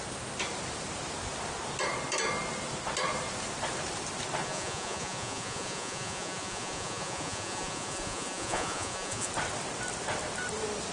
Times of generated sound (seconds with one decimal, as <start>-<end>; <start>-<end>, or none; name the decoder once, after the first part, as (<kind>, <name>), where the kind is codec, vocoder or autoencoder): 4.4-9.3 (vocoder, Vocos)